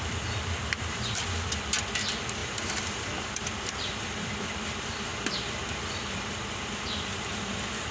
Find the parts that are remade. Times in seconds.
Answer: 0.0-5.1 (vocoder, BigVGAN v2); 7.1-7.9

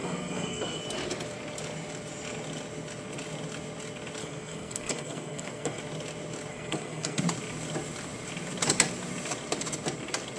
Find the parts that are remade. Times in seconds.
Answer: 0.0-0.8 (codec, SNAC); 4.2-5.8; 6.5-7.2

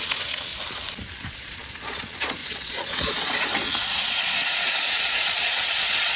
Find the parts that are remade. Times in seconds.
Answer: 0.0-0.5 (vocoder, Vocos); 1.3-6.2

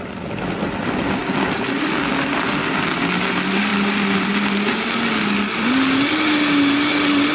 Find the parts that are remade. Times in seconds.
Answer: none

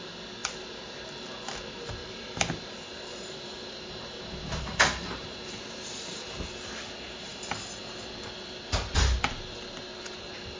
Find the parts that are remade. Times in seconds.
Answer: 0.4-1.1 (vocoder, BigVGAN v2); 2.0-2.7; 3.1-6.5